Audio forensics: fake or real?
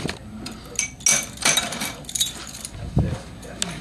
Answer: real